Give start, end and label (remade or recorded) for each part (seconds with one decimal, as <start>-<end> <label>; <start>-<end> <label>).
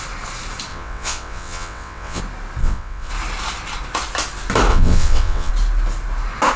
0.0-0.7 recorded; 0.7-2.2 remade; 2.2-2.6 recorded; 2.6-3.1 remade; 3.1-4.7 recorded; 4.7-5.5 remade; 5.5-6.6 recorded